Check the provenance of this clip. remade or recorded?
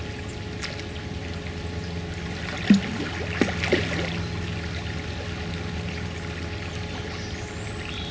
recorded